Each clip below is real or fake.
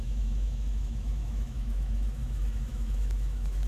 fake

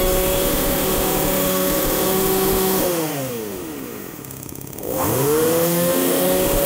fake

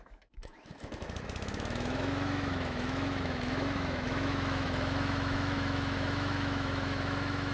fake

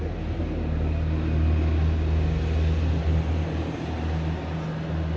real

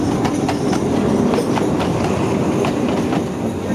real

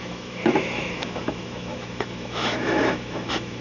fake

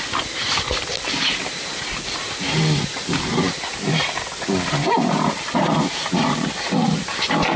real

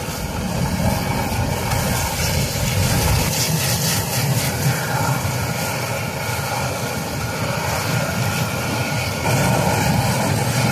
real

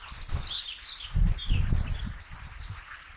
real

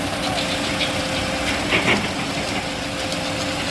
real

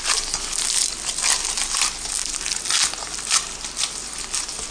real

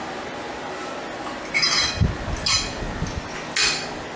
real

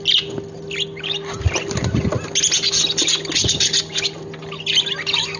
real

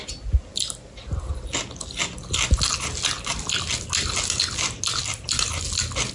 real